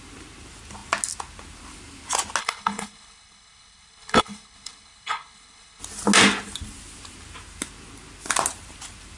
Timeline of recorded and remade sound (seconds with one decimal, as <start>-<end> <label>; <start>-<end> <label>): 0.0-2.4 recorded; 2.4-5.8 remade; 5.8-9.2 recorded